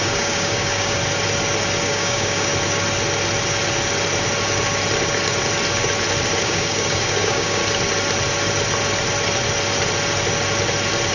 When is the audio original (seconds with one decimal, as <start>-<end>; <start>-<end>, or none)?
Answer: 1.0-1.8; 2.5-6.4; 7.6-11.1